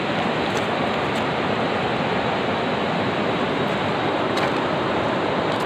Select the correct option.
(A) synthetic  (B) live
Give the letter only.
B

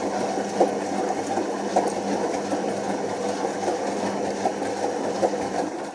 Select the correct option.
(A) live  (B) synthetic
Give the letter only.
A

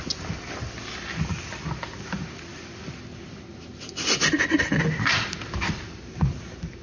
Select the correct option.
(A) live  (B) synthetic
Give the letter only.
A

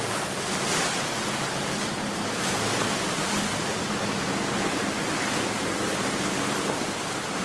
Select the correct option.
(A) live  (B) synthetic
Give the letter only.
A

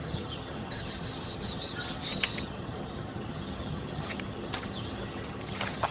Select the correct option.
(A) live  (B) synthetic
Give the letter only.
B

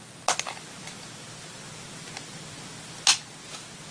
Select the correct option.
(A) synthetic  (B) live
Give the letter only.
B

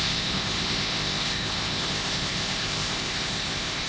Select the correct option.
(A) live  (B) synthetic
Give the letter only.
B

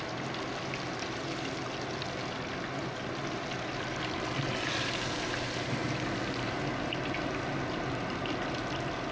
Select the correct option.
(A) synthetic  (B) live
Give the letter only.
B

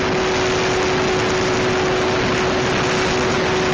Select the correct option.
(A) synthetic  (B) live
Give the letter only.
B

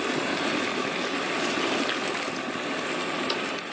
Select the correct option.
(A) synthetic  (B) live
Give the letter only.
B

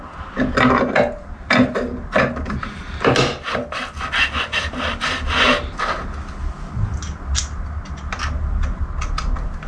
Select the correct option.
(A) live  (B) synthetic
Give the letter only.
A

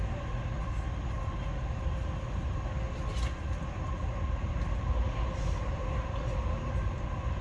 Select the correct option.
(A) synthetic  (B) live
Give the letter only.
B